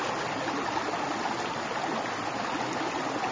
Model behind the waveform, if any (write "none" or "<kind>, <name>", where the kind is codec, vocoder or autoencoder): none